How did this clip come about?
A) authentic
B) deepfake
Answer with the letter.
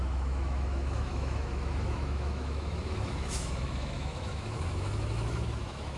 B